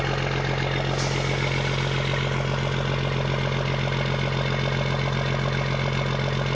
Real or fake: real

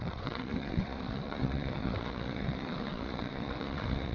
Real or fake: fake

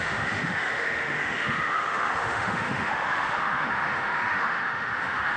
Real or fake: fake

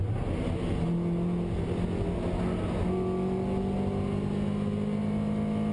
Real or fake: real